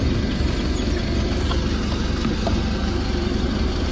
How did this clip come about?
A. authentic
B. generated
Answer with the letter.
A